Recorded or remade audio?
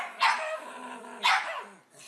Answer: recorded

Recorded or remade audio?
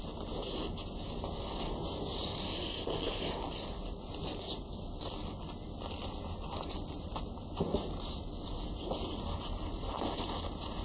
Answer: recorded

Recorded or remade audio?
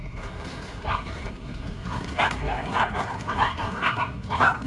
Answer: remade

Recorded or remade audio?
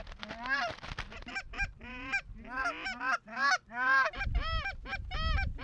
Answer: recorded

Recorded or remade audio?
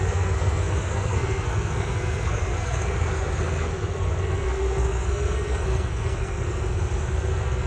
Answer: remade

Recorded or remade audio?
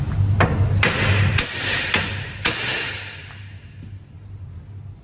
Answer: recorded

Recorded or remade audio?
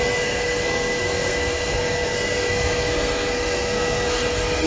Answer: remade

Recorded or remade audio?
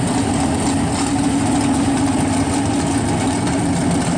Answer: recorded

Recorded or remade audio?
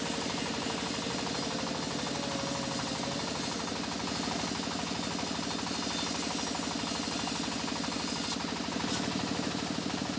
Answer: recorded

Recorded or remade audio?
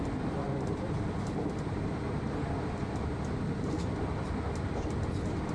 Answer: recorded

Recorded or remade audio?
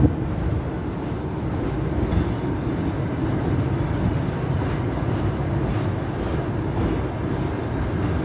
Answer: recorded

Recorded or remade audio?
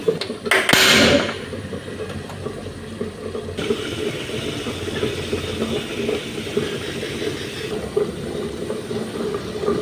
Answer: recorded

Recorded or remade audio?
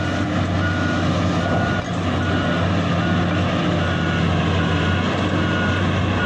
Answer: recorded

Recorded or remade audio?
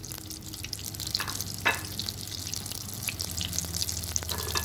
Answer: recorded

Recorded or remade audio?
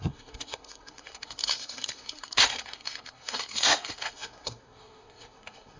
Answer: remade